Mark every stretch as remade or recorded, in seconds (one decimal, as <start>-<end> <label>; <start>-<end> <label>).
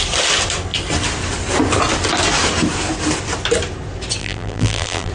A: 0.0-4.2 recorded; 4.2-5.1 remade